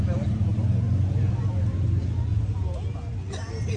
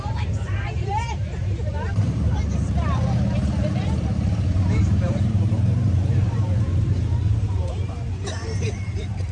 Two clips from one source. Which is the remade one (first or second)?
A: second